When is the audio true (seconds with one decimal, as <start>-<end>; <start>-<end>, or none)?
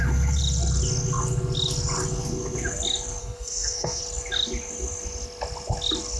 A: 0.0-3.2; 4.0-6.2